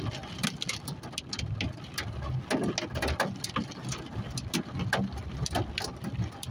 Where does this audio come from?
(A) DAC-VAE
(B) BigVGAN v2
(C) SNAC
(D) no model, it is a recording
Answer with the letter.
D